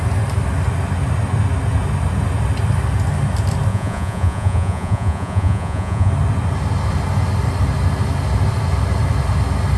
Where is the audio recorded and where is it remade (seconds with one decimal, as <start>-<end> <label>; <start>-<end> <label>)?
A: 0.0-3.7 recorded; 3.7-6.1 remade; 6.1-9.8 recorded